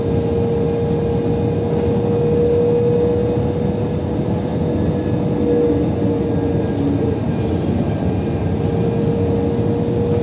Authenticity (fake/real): real